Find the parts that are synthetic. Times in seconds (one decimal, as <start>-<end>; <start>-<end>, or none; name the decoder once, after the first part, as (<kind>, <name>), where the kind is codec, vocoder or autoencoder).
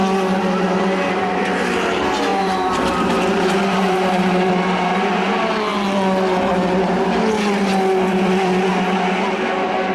2.3-4.5 (vocoder, BigVGAN v2)